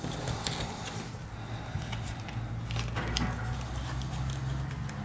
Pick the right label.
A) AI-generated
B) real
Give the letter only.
B